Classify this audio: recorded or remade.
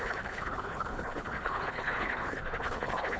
remade